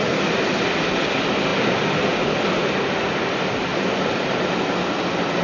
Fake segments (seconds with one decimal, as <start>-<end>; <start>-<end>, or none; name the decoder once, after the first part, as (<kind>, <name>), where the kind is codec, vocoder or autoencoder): none